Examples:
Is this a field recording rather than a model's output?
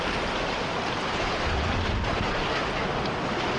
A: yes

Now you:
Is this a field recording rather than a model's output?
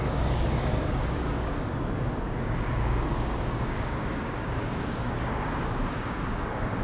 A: no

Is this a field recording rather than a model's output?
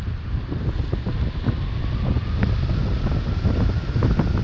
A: yes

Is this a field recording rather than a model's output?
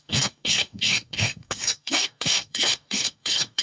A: no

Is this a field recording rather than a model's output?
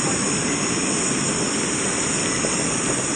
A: yes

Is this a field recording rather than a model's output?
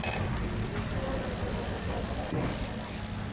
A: yes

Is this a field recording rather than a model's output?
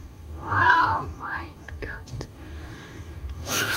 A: no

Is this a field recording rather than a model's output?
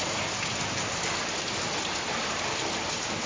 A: yes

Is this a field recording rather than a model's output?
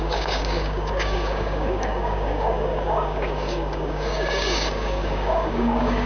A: no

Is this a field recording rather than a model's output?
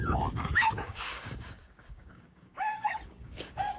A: no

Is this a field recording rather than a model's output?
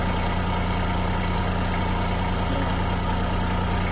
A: yes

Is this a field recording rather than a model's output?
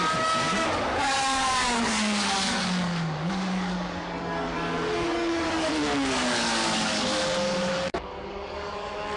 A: no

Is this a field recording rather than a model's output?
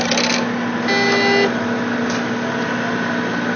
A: yes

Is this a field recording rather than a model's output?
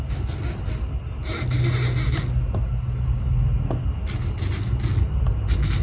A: yes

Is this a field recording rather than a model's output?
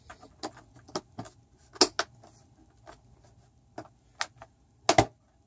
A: yes